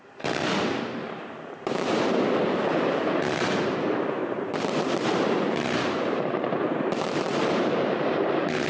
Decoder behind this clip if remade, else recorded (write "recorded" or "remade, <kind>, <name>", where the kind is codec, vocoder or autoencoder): remade, vocoder, BigVGAN v2